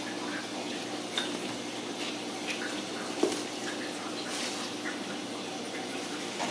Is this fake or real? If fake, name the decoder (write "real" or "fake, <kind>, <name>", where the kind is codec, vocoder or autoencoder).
real